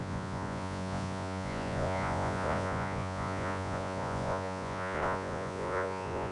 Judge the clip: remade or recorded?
remade